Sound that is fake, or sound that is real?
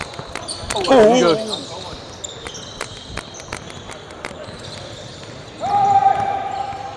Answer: real